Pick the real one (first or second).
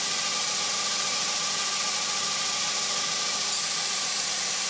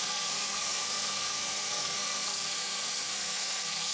first